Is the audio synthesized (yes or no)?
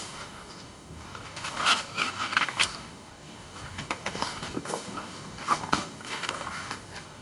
yes